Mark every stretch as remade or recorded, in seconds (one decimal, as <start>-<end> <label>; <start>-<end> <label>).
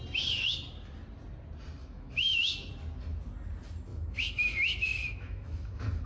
0.0-1.8 recorded; 1.8-2.7 remade; 2.7-3.9 recorded; 3.9-6.1 remade